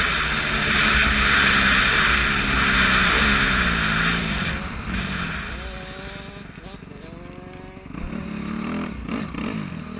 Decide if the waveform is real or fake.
real